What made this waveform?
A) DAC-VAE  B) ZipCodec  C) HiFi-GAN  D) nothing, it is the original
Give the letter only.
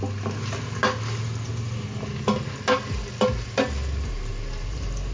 D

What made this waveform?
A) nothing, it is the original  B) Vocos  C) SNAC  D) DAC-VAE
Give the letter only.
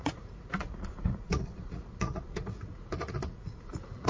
B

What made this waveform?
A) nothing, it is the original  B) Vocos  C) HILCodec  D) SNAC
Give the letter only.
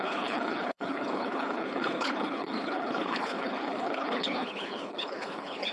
C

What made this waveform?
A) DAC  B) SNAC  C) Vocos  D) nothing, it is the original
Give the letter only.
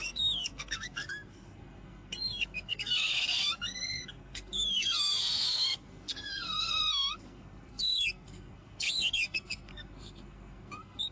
B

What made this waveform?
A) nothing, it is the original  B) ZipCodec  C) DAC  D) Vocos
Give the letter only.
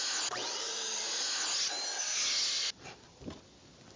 A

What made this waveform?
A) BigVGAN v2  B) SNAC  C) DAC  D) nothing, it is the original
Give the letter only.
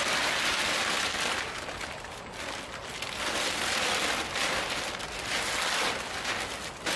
D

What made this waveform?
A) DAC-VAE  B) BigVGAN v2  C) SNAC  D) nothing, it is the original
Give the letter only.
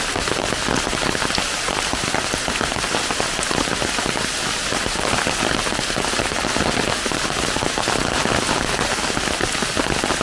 D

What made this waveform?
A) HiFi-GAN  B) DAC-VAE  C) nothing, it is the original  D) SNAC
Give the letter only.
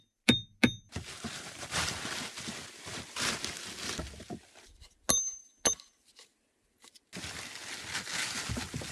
C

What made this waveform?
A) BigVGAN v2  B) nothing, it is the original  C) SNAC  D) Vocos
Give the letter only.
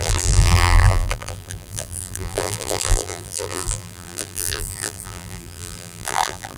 A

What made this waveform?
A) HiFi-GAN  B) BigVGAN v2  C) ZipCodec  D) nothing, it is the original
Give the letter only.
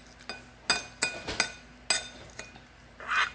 D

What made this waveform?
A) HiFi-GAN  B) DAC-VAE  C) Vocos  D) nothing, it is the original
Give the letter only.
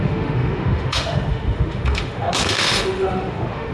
B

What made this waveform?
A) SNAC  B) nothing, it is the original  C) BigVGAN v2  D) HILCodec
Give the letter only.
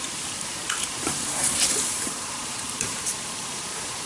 C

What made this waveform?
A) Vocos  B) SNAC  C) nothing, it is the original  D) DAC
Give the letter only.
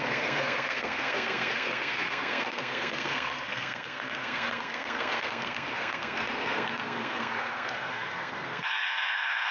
B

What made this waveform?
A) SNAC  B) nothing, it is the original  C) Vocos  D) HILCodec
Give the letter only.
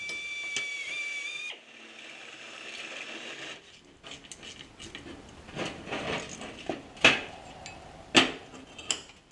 B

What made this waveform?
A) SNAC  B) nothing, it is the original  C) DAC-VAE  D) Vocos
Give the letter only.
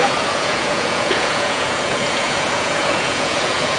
D